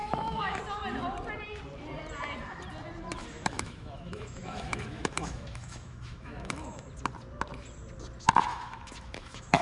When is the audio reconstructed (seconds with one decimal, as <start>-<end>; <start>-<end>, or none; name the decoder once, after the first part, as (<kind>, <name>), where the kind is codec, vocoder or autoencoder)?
0.0-0.6 (autoencoder, DAC-VAE); 3.2-6.9; 8.5-9.6